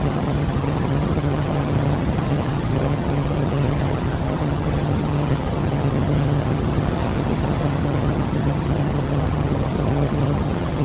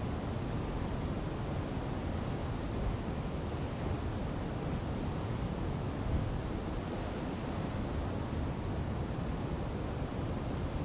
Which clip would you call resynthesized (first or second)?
first